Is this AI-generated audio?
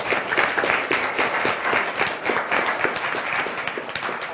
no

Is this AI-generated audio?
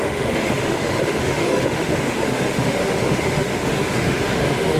yes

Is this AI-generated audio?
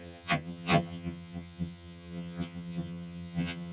yes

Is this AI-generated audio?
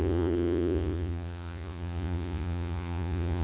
yes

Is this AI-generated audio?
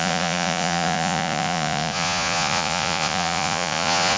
yes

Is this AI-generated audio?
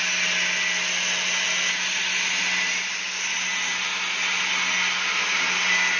no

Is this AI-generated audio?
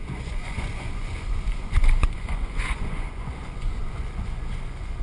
yes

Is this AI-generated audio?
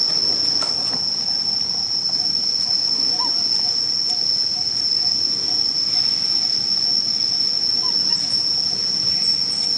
no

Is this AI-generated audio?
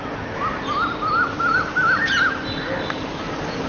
no